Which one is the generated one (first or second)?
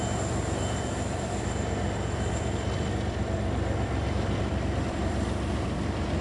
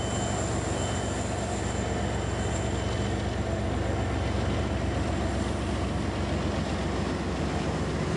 first